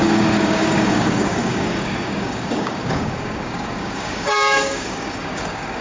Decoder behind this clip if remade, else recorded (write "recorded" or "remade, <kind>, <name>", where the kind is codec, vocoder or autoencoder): remade, codec, DAC